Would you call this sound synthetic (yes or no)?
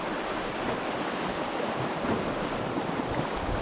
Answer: no